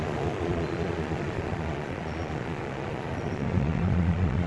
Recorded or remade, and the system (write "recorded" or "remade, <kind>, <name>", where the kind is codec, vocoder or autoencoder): remade, vocoder, Vocos